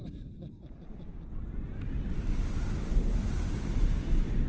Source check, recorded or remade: recorded